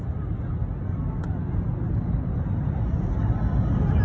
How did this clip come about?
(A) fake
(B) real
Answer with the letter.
B